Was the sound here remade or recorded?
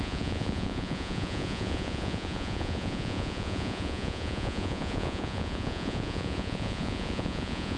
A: remade